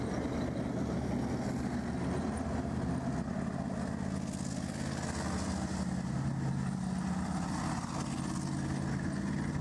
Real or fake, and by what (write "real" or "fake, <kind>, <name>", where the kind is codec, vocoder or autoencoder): real